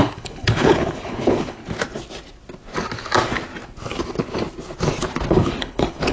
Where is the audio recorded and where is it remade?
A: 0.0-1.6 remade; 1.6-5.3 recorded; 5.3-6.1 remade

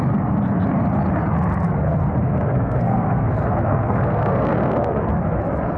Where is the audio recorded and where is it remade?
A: 0.0-2.2 recorded; 2.2-3.3 remade; 3.3-3.7 recorded; 3.7-5.0 remade; 5.0-5.8 recorded

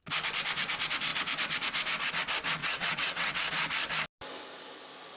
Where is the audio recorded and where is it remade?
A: 0.0-2.6 recorded; 2.6-3.5 remade; 3.5-5.2 recorded

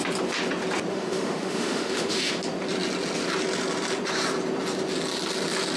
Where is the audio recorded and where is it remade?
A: 0.0-0.9 recorded; 0.9-2.3 remade; 2.3-5.8 recorded

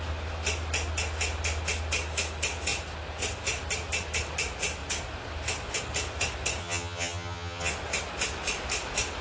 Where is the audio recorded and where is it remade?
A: 0.0-6.6 recorded; 6.6-7.7 remade; 7.7-9.2 recorded

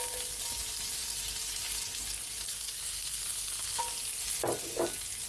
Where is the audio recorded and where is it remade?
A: 0.0-2.5 recorded; 2.5-3.8 remade; 3.8-5.3 recorded

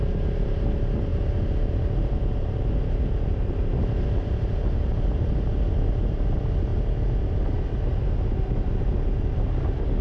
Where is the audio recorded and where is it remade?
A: 0.0-10.0 recorded

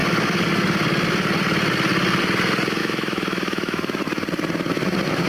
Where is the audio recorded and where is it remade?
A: 0.0-2.8 recorded; 2.8-4.0 remade; 4.0-5.3 recorded